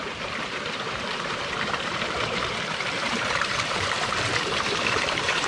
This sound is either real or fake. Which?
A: fake